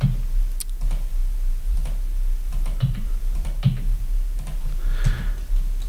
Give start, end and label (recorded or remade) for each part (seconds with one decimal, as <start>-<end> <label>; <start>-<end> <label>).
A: 0.0-1.2 recorded; 1.2-4.7 remade; 4.7-5.9 recorded